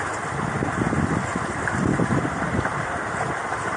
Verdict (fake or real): real